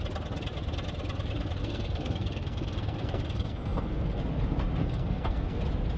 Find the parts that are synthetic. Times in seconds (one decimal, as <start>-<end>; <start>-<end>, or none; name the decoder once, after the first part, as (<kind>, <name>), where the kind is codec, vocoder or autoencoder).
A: 1.6-4.2 (codec, SNAC); 4.8-5.6